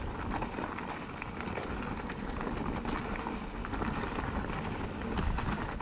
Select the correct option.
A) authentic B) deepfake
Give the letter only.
A